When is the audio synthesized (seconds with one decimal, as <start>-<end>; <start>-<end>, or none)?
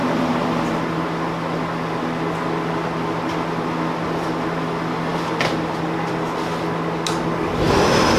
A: none